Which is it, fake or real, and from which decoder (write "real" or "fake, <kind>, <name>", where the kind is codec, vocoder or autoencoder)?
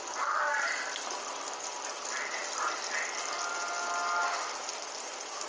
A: real